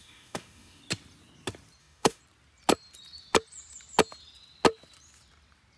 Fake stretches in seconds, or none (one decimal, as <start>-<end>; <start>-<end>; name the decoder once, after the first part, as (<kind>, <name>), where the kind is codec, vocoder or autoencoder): 0.0-0.8 (autoencoder, DAC-VAE); 1.8-2.2